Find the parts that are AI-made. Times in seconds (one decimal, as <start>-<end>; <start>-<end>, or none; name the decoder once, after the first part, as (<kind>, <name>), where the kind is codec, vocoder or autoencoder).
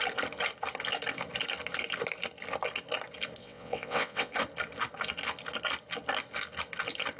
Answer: 3.4-4.3 (vocoder, WaveNeXt)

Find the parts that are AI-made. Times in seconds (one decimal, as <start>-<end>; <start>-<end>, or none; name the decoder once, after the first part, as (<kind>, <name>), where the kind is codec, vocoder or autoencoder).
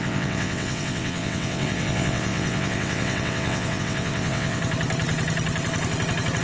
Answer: 0.0-4.6 (vocoder, WaveNeXt)